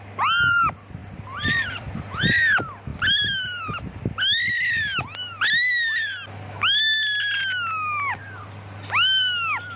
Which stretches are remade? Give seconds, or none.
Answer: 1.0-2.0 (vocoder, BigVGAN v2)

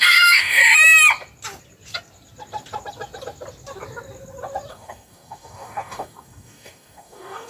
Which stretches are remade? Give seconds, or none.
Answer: 0.0-0.6 (codec, DAC); 4.7-7.5